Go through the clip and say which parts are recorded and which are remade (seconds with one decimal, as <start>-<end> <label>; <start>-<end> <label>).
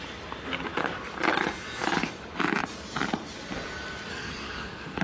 0.0-4.1 recorded; 4.1-5.0 remade